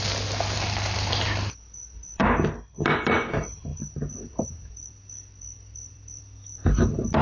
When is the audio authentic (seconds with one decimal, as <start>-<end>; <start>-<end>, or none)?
3.7-4.3

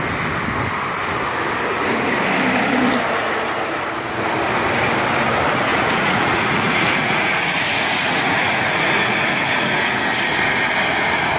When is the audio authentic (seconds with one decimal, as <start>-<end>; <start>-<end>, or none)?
0.0-5.7; 10.0-11.4

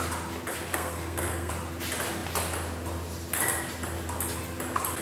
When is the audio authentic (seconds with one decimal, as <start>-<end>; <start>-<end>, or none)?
0.0-0.7; 1.5-5.0

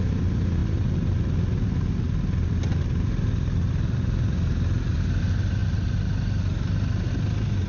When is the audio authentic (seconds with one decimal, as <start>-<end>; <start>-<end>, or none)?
0.0-7.7

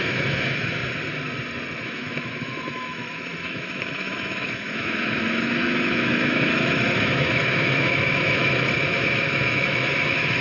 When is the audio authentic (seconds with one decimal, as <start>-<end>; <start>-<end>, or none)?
0.8-1.9

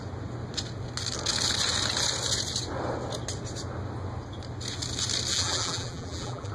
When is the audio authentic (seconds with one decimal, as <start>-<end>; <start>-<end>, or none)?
0.0-5.3

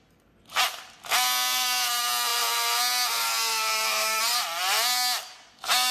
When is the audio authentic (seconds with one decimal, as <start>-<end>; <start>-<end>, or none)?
0.0-3.7; 4.2-5.9